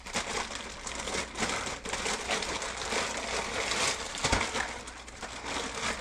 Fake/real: real